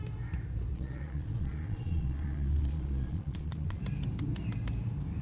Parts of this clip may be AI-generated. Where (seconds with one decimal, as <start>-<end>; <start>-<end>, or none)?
0.7-3.8